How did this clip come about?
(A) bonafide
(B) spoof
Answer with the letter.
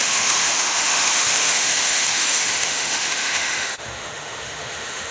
B